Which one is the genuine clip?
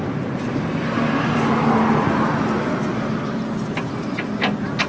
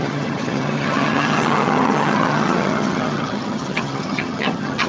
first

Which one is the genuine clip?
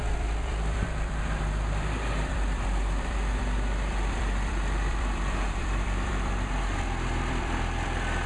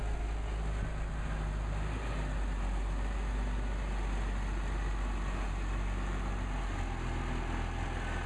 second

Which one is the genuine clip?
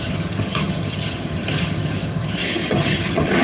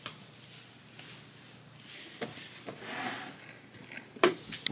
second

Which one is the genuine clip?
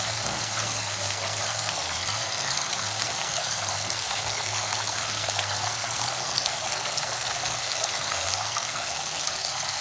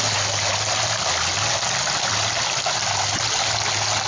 second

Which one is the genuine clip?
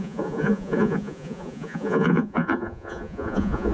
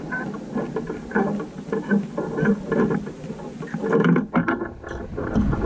second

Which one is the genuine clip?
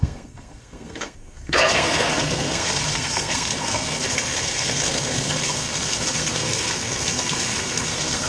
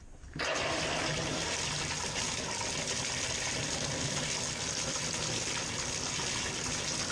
second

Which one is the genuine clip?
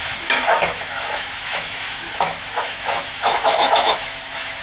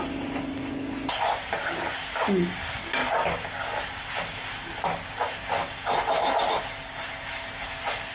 second